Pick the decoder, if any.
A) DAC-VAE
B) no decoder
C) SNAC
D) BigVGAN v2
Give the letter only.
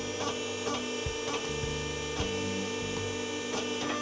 B